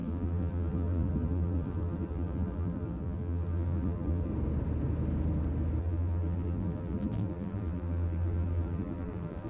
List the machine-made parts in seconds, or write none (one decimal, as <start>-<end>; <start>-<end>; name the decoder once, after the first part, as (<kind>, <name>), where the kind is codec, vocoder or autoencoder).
0.0-4.3 (vocoder, BigVGAN v2); 5.8-9.5